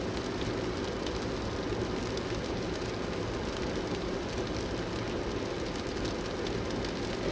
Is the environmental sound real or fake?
real